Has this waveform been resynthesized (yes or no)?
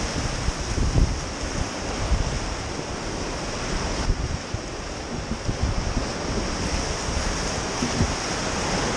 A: no